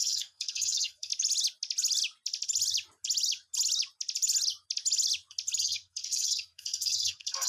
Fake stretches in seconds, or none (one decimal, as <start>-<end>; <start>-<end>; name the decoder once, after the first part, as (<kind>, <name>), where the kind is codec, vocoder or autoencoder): 0.0-1.1 (codec, SNAC); 5.6-7.5